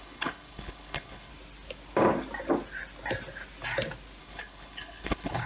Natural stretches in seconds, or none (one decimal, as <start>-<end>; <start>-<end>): 1.3-4.2